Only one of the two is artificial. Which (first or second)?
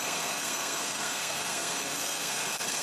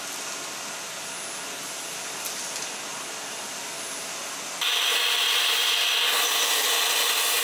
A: first